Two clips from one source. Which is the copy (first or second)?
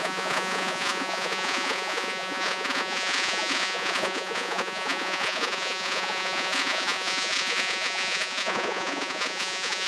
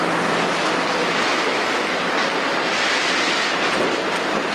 first